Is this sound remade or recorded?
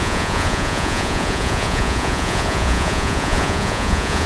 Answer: remade